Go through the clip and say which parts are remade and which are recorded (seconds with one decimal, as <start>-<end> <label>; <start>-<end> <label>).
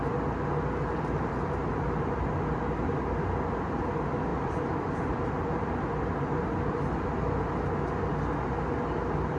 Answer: 0.0-4.3 recorded; 4.3-5.3 remade; 5.3-9.4 recorded